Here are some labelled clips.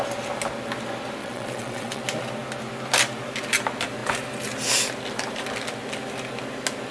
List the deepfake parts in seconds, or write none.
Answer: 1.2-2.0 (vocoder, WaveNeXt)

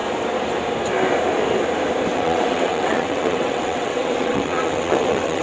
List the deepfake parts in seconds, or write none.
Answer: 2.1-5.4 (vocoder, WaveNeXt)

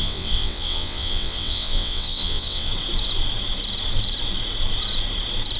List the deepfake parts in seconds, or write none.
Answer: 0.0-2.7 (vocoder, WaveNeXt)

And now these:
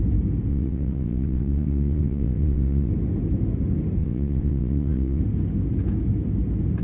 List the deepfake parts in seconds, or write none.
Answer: 0.5-2.9 (vocoder, WaveNeXt); 4.0-5.2

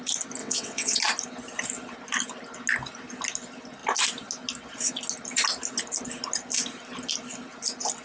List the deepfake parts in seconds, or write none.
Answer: 0.4-1.0 (vocoder, WaveNeXt)